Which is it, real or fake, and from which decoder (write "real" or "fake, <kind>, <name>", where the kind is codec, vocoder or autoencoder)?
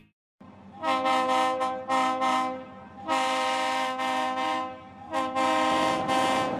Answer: fake, vocoder, BigVGAN v2